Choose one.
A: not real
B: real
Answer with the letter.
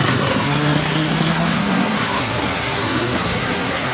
A